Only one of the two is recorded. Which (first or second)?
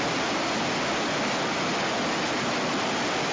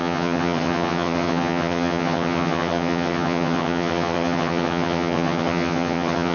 first